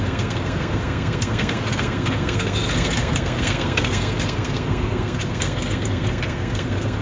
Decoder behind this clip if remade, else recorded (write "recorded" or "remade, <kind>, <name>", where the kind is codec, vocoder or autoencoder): remade, codec, SNAC